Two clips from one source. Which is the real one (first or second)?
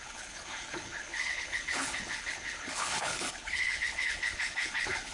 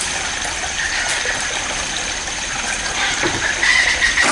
second